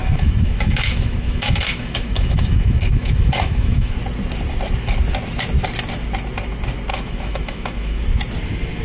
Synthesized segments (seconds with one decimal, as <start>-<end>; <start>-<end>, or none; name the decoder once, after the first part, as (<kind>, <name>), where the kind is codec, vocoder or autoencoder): 0.0-4.0 (autoencoder, DAC-VAE); 6.9-8.0

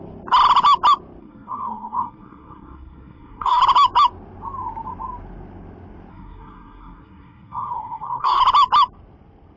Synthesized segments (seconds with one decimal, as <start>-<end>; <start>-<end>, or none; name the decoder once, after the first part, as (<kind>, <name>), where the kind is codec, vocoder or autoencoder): 1.2-3.6 (codec, SNAC); 6.1-8.4

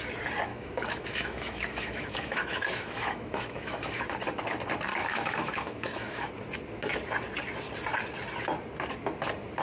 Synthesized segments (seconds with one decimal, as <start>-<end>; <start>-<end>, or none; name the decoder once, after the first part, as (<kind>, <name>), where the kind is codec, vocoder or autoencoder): 0.5-4.0 (autoencoder, DAC-VAE); 4.9-6.3

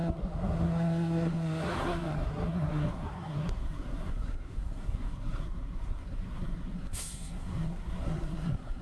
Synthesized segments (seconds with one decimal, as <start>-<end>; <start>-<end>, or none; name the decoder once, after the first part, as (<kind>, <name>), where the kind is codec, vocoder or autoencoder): 0.0-8.8 (codec, SNAC)